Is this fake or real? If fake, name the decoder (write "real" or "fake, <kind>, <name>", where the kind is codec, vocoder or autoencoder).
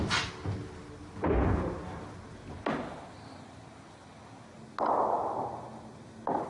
real